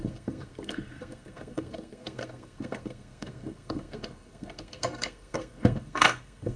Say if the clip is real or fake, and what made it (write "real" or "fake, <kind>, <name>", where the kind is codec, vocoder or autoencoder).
fake, codec, SNAC